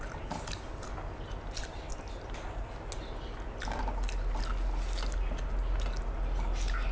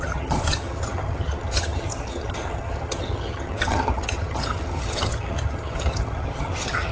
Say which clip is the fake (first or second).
second